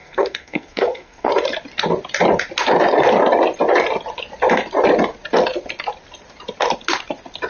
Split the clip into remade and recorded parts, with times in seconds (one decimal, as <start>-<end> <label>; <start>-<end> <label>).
0.0-1.3 remade; 1.3-7.5 recorded